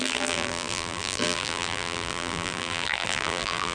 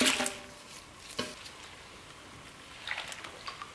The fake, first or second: first